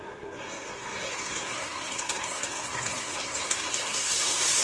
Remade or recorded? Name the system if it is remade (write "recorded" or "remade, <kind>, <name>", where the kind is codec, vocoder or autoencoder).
remade, codec, SNAC